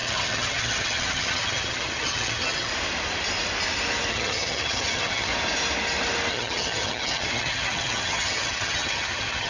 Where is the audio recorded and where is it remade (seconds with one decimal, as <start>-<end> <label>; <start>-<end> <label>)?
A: 0.0-2.7 remade; 2.7-4.1 recorded; 4.1-5.3 remade; 5.3-6.3 recorded; 6.3-9.5 remade